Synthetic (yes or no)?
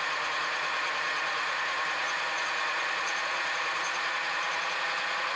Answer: yes